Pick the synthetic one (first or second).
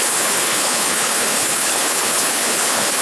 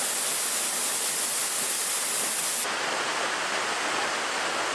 first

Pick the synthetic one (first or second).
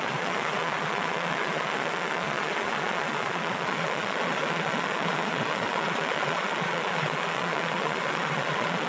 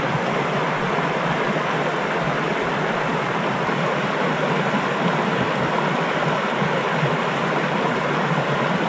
first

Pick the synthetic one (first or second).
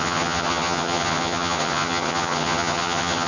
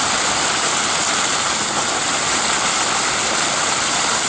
first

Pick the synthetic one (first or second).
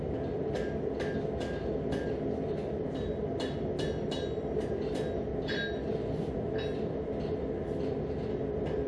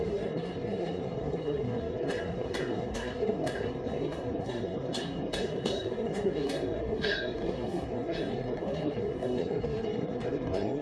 second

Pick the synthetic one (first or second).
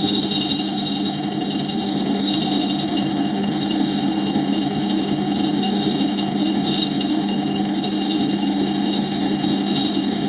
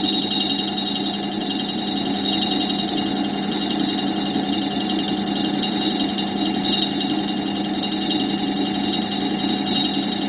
first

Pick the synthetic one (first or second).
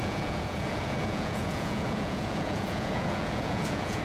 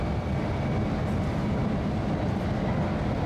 first